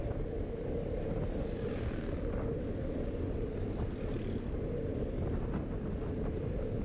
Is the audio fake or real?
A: real